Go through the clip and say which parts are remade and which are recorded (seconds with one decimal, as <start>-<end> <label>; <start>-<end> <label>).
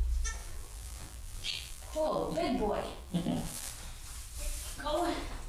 0.0-0.4 recorded; 0.4-3.7 remade; 3.7-5.5 recorded